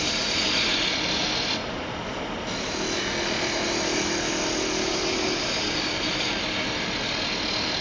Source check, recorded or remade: recorded